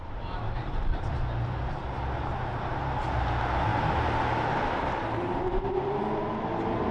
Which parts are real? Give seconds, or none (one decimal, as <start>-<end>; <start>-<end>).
1.1-6.9